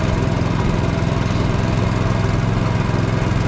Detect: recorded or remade recorded